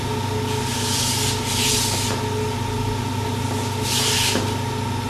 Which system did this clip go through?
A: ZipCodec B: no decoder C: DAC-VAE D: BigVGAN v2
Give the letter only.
B